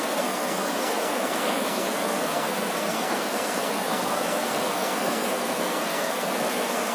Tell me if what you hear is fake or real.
fake